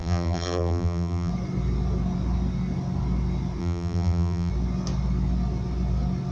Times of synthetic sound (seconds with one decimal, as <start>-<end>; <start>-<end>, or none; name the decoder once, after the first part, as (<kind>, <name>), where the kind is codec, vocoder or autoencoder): 0.0-1.3 (vocoder, BigVGAN v2); 3.6-4.5